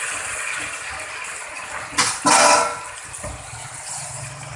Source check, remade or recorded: recorded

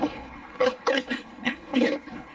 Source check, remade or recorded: remade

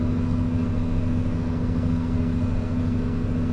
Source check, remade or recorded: remade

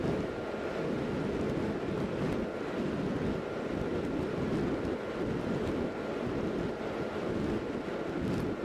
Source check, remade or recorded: recorded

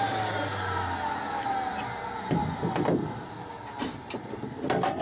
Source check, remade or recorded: recorded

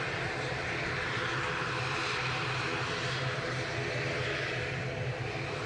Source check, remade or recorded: remade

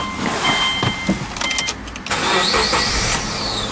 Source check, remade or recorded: recorded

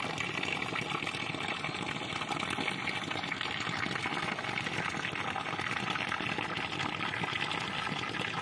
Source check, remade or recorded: recorded